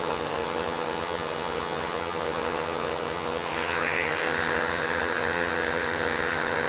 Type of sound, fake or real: fake